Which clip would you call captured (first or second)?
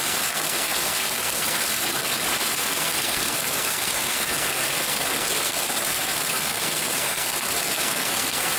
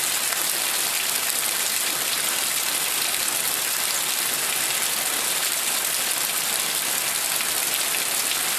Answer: second